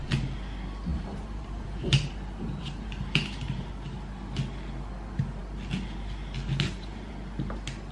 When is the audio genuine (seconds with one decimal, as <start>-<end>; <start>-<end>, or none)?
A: 0.0-0.9; 3.7-7.9